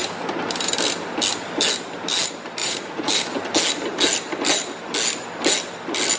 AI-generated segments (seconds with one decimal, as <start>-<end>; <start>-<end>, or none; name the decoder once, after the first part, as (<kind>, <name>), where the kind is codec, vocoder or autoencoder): 2.6-3.1 (vocoder, Vocos)